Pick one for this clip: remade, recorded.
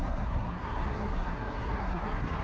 remade